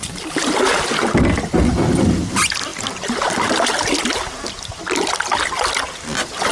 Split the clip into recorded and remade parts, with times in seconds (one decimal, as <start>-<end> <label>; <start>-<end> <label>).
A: 0.0-6.5 recorded